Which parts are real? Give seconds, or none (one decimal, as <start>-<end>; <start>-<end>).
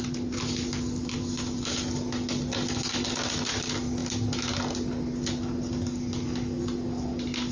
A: 0.0-7.5